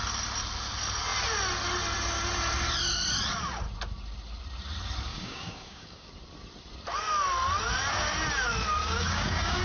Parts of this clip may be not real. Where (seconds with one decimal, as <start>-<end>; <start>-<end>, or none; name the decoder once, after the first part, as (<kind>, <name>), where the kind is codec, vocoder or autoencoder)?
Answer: 5.1-6.1 (codec, DAC); 8.8-9.6